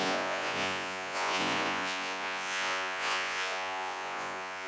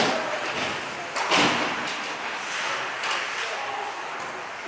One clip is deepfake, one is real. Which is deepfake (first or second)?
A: first